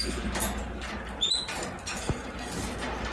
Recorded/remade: recorded